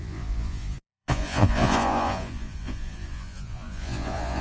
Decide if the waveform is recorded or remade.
remade